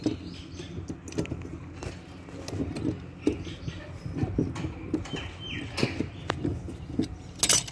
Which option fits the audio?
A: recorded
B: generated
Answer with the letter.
A